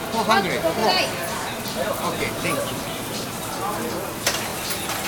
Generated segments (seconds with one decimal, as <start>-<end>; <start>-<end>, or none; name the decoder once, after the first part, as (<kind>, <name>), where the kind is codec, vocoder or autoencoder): 0.8-3.9 (vocoder, BigVGAN v2)